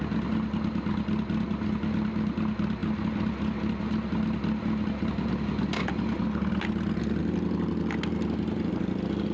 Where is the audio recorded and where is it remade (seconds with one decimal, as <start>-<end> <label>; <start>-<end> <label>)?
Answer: 0.0-9.3 recorded